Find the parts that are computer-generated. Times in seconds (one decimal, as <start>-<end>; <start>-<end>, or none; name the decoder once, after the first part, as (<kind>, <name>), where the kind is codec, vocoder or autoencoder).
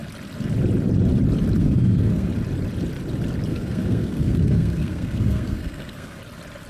1.6-2.3 (codec, SNAC); 3.5-6.2